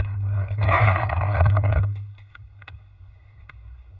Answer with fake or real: fake